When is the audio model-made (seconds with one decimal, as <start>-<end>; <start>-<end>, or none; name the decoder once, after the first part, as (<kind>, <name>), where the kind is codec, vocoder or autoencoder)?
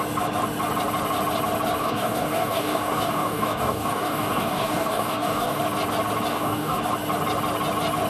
1.8-5.6 (codec, DAC); 6.3-6.8